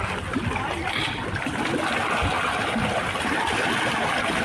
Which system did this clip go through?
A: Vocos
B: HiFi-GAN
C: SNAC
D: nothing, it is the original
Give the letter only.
D